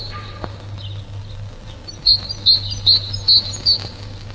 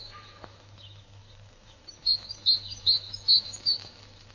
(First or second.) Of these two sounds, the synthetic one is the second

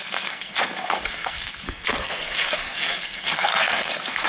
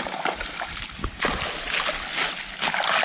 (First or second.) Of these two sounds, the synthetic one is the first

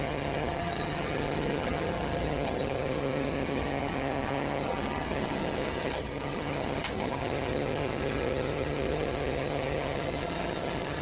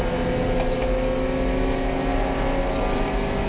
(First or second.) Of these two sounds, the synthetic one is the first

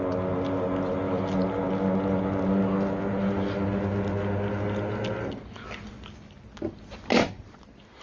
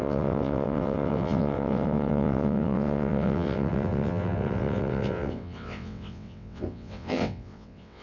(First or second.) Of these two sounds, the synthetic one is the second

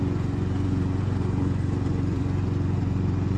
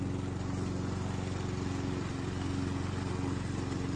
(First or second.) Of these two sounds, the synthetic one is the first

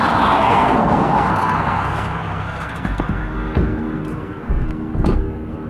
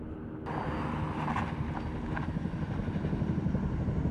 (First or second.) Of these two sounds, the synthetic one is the first